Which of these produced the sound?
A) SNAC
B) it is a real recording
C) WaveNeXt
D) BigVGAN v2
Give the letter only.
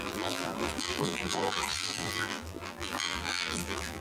D